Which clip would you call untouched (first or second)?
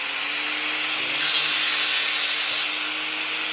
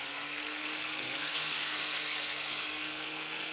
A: first